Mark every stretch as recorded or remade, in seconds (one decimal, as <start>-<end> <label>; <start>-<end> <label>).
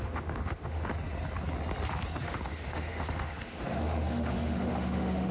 0.0-0.9 remade; 0.9-2.2 recorded; 2.2-5.3 remade